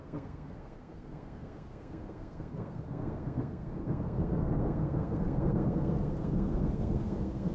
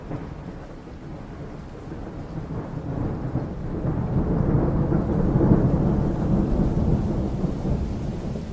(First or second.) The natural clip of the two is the second